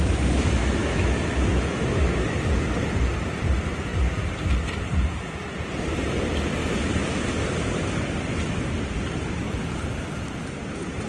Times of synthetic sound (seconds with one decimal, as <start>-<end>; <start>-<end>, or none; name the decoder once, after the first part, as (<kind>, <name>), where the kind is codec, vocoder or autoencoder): 0.8-2.6 (autoencoder, DAC-VAE)